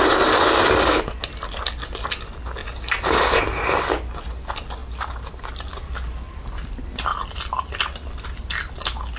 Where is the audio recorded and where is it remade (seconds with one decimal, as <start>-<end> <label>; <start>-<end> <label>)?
0.0-2.6 recorded; 2.6-3.4 remade; 3.4-9.2 recorded